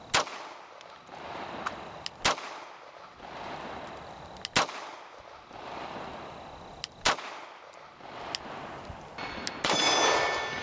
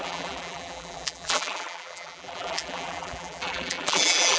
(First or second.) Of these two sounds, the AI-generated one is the second